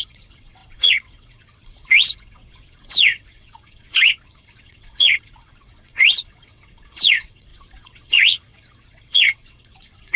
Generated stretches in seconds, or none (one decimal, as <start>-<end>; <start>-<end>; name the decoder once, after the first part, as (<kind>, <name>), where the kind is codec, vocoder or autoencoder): 0.0-10.2 (vocoder, WaveNeXt)